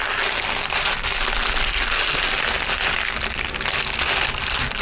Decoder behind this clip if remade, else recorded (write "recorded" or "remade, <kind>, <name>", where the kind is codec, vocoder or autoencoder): recorded